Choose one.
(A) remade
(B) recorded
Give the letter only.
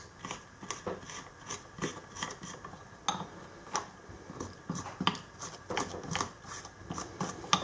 B